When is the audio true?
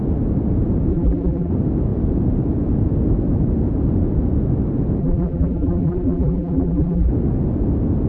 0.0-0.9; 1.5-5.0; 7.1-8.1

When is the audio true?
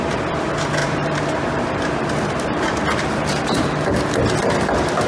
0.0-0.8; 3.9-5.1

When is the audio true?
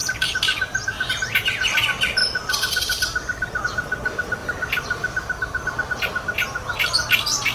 1.1-2.2; 3.6-4.4; 7.1-7.5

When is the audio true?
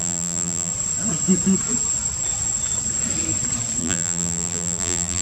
0.7-3.8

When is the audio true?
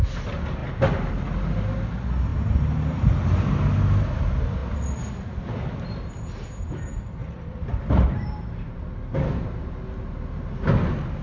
0.0-2.3; 3.2-7.2; 8.8-11.2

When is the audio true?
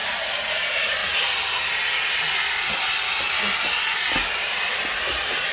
1.0-4.1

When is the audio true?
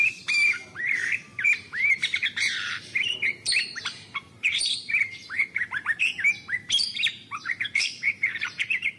none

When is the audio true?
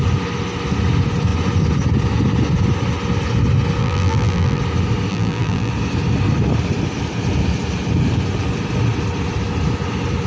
0.0-3.8; 4.6-5.1; 5.7-10.3